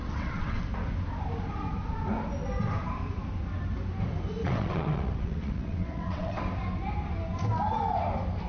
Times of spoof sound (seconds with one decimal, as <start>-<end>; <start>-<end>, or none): 0.0-0.6; 4.4-6.4